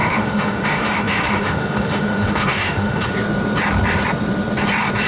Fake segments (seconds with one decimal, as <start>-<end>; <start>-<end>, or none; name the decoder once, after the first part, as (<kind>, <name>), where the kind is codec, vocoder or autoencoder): 0.0-3.1 (autoencoder, DAC-VAE)